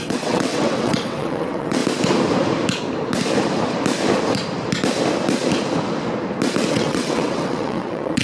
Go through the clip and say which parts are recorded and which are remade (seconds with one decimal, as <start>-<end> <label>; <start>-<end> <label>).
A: 0.0-1.8 remade; 1.8-6.7 recorded; 6.7-8.2 remade